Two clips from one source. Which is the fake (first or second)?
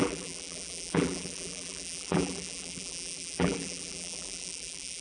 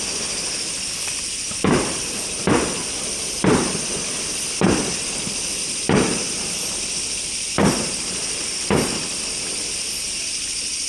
first